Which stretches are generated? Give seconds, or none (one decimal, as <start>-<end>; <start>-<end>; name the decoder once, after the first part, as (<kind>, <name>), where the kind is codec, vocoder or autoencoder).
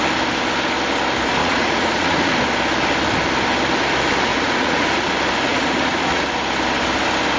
1.4-2.3 (vocoder, Vocos); 4.3-5.1; 5.5-6.2